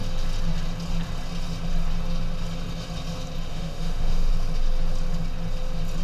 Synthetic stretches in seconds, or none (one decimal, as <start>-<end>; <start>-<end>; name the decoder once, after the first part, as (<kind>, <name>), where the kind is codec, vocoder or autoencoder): 3.5-4.3 (autoencoder, DAC-VAE)